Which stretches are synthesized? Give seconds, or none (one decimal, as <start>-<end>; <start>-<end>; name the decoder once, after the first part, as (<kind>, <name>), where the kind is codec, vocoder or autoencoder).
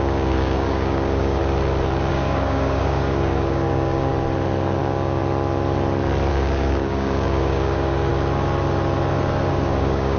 0.0-1.4 (codec, DAC); 2.1-4.1; 4.8-5.2; 6.3-8.1; 9.5-10.2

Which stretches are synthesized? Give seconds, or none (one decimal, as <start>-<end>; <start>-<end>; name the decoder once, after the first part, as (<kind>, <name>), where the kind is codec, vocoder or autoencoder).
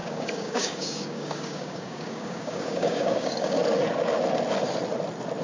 0.0-3.6 (codec, DAC)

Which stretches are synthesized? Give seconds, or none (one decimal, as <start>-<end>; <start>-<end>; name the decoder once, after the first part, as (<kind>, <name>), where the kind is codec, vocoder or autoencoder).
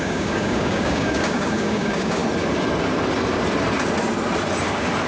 0.0-2.2 (codec, DAC)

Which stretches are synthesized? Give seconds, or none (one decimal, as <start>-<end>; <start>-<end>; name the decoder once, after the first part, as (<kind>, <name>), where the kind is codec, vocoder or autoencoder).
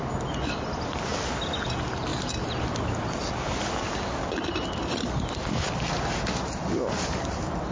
none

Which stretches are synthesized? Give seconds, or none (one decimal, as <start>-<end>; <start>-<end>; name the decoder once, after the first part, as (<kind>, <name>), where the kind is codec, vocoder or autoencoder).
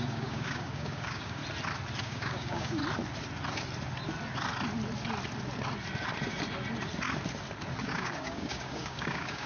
0.0-1.4 (codec, DAC); 2.0-2.8; 7.8-9.5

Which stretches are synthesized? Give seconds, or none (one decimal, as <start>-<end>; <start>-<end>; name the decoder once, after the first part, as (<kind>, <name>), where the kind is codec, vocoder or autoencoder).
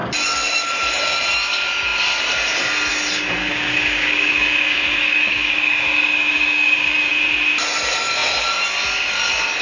3.4-7.1 (codec, DAC)